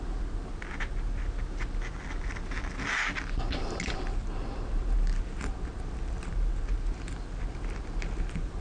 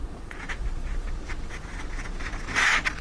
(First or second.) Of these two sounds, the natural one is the first